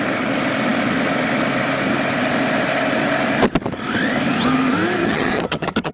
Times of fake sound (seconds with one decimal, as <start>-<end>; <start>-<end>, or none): 5.0-5.9